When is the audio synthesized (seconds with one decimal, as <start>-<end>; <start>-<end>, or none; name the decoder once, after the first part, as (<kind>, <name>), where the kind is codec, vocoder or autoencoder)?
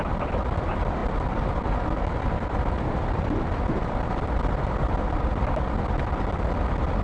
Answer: 1.0-5.2 (vocoder, BigVGAN v2)